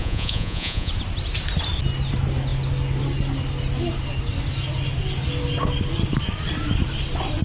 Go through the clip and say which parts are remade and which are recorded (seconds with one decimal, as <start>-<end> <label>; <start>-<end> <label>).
0.0-0.9 remade; 0.9-7.4 recorded